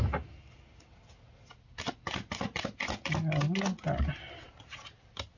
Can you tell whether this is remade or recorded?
recorded